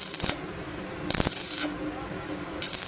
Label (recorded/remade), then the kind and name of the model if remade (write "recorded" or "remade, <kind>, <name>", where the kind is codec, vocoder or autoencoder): recorded